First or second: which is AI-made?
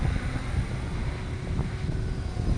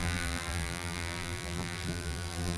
second